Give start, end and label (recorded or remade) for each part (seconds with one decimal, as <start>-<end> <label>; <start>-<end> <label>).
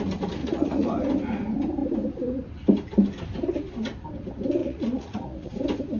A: 0.0-0.4 recorded; 0.4-0.9 remade; 0.9-4.6 recorded; 4.6-5.5 remade; 5.5-6.0 recorded